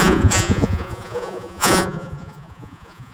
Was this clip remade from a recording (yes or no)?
yes